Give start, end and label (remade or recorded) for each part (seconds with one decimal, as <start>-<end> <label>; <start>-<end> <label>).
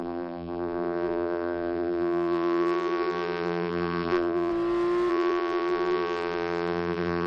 0.0-4.5 remade; 4.5-5.1 recorded; 5.1-7.3 remade